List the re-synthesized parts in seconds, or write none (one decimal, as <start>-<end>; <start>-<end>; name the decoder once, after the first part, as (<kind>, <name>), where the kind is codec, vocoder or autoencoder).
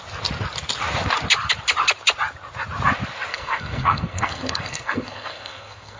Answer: 3.3-6.0 (codec, SNAC)